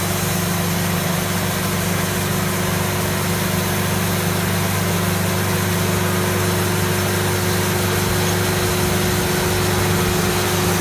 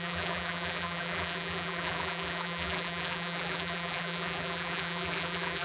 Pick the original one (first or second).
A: first